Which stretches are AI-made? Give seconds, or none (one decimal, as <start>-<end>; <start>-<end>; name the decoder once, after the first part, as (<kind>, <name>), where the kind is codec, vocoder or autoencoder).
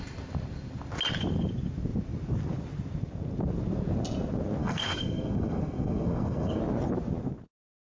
4.6-6.6 (codec, SNAC)